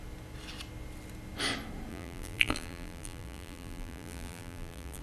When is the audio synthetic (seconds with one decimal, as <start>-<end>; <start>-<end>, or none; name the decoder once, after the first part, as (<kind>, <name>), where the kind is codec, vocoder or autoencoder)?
1.9-5.0 (vocoder, BigVGAN v2)